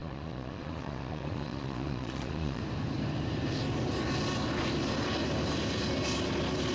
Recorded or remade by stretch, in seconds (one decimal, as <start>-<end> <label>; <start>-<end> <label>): 0.0-2.6 remade; 2.6-6.7 recorded